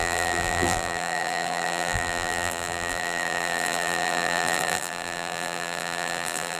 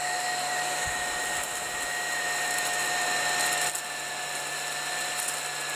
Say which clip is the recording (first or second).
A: second